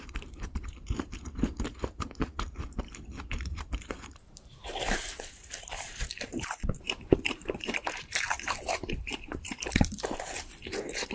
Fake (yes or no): yes